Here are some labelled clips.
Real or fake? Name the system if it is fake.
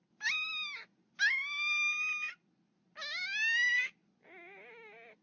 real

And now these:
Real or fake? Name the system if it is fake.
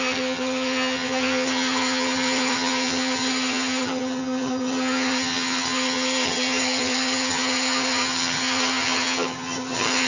fake, vocoder, HiFi-GAN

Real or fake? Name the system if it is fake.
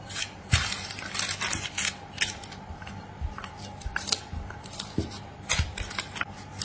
real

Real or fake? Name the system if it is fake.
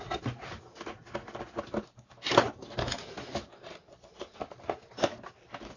real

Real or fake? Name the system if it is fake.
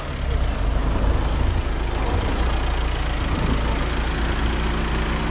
real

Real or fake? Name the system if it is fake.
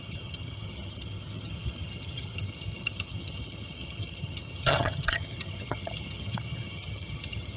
fake, vocoder, HiFi-GAN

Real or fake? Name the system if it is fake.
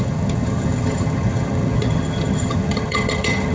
fake, vocoder, HiFi-GAN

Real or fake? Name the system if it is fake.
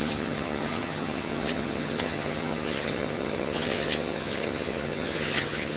fake, vocoder, HiFi-GAN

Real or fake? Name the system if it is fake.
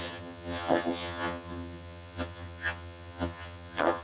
fake, vocoder, HiFi-GAN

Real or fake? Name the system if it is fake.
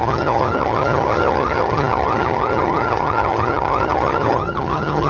fake, vocoder, HiFi-GAN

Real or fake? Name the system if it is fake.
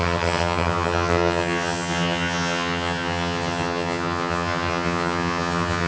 fake, vocoder, HiFi-GAN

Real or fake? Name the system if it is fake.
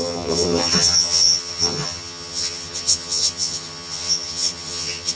fake, vocoder, HiFi-GAN